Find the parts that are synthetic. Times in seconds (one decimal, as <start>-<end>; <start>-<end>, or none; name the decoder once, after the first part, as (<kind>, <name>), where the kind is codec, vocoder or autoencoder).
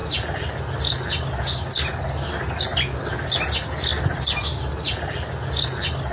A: none